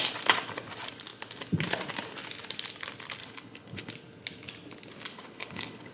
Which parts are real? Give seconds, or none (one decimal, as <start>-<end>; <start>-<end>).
0.0-3.2; 3.9-5.1